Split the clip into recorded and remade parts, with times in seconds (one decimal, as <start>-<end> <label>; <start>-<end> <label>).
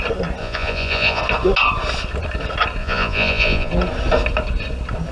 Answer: 0.0-0.4 recorded; 0.4-1.2 remade; 1.2-2.8 recorded; 2.8-3.7 remade; 3.7-5.1 recorded